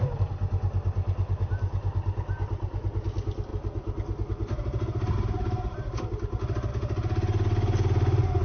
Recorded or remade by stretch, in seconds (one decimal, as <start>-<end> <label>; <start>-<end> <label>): 0.0-8.4 recorded